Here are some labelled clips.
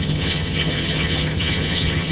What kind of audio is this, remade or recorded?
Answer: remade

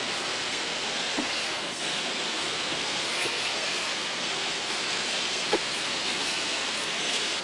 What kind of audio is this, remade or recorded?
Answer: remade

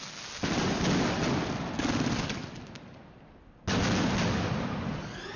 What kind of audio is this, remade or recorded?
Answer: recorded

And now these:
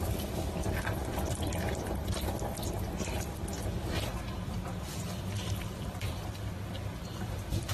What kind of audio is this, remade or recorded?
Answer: remade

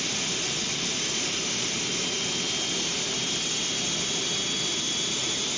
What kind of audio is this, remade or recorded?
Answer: recorded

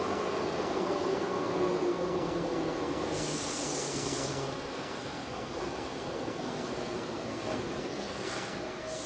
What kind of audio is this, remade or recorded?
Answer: remade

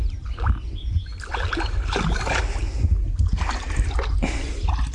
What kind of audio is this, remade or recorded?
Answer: recorded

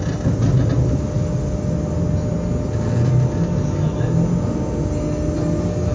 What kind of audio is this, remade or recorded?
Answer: recorded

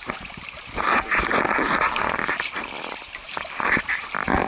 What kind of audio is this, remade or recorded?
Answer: recorded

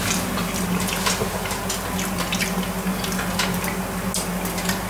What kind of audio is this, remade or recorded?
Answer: recorded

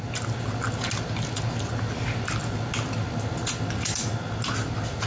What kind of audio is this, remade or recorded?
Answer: recorded